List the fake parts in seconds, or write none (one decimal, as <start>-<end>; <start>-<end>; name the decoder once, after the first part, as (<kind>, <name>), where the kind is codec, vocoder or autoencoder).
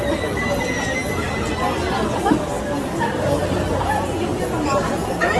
none